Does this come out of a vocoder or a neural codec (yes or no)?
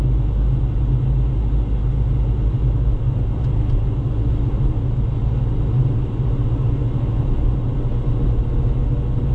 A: no